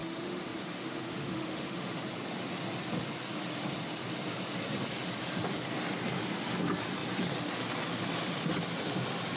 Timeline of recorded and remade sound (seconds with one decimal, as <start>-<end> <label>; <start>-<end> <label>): 0.0-2.0 remade; 2.0-9.4 recorded